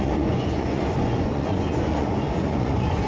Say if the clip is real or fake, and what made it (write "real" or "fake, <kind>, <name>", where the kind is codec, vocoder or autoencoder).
fake, vocoder, Vocos